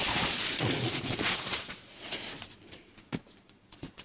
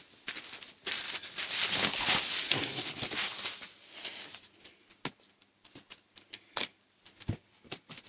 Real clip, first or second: second